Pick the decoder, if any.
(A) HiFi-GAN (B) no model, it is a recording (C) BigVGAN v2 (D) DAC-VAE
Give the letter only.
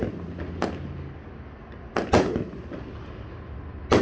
B